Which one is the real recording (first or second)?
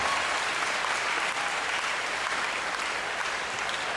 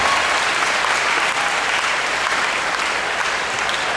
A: second